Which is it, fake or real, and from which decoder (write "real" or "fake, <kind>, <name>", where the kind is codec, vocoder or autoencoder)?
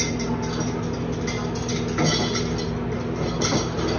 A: real